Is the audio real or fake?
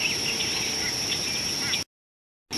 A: real